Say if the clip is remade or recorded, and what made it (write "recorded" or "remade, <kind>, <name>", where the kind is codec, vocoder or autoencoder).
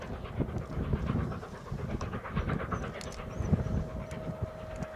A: recorded